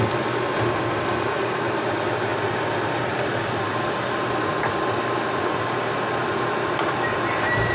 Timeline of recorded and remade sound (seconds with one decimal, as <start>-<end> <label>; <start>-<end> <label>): 0.0-7.7 recorded